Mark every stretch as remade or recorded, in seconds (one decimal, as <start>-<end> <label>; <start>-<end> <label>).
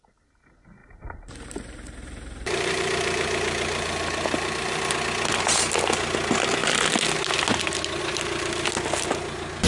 0.0-0.8 recorded; 0.8-4.9 remade; 4.9-9.7 recorded